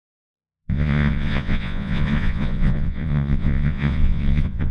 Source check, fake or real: fake